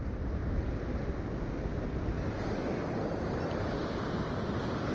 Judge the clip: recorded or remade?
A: recorded